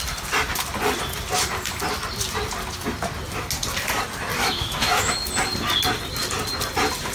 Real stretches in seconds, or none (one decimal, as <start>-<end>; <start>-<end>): 0.0-4.4; 5.1-7.1